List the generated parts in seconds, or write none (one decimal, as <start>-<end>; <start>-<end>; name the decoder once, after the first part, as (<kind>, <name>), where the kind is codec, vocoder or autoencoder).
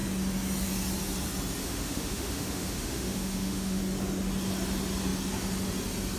1.6-3.8 (autoencoder, DAC-VAE)